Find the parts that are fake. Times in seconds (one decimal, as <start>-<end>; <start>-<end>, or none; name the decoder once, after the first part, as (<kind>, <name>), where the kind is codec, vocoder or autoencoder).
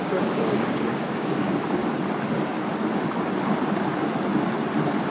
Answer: 0.0-1.8 (codec, DAC)